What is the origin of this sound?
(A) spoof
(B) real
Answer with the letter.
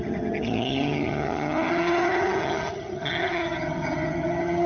A